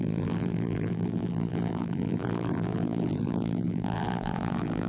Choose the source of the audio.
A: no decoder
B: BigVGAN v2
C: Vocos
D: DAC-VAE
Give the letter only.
B